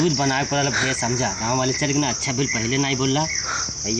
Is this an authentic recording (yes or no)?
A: yes